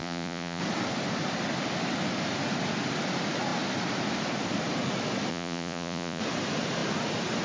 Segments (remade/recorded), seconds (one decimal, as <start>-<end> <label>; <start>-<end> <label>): 0.0-0.6 remade; 0.6-5.3 recorded; 5.3-6.2 remade; 6.2-7.4 recorded